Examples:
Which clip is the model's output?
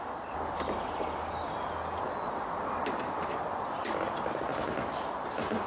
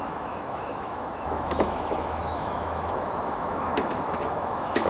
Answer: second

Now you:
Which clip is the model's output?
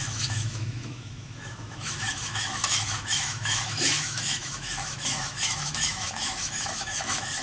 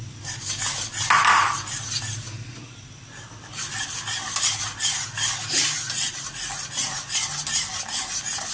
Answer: first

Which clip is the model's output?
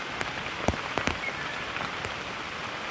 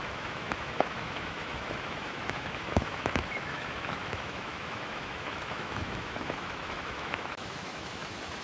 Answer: second